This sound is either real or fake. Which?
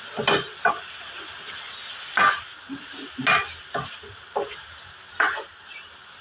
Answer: real